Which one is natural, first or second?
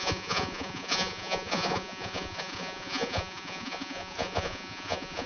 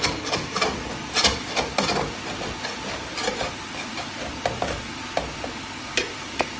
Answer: second